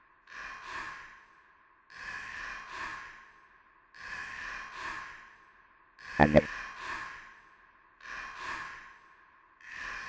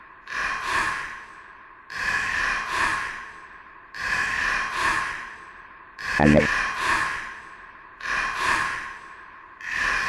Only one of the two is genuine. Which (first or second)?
first